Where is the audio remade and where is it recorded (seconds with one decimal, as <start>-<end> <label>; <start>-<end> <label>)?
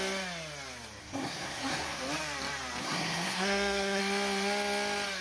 0.0-1.0 recorded; 1.0-2.0 remade; 2.0-2.8 recorded; 2.8-4.0 remade; 4.0-5.2 recorded